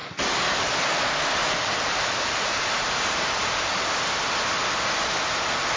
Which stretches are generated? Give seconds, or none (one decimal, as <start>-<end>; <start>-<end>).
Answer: 0.0-0.6; 1.4-3.8